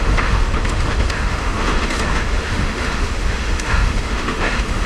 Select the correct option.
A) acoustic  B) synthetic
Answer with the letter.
B